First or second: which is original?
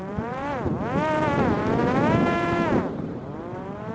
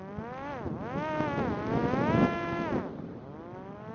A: second